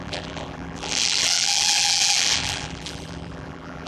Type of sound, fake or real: fake